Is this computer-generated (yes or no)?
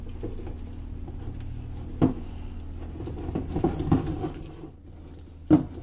no